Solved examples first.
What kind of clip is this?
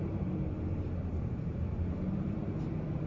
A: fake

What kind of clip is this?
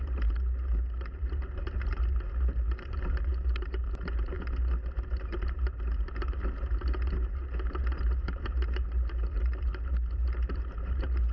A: fake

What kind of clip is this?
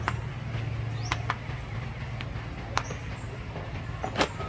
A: real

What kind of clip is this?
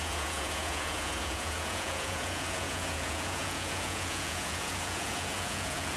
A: fake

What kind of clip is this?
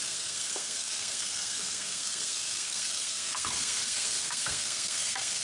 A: fake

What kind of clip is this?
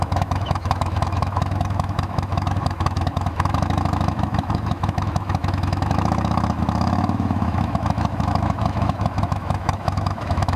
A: fake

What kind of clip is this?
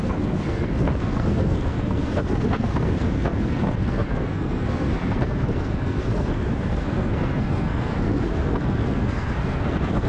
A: fake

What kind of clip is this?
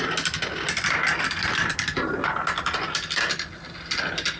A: real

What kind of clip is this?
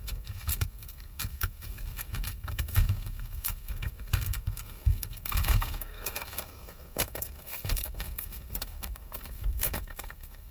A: fake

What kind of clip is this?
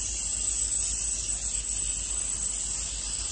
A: real